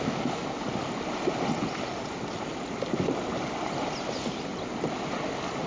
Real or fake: real